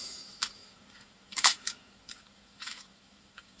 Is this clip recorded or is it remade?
remade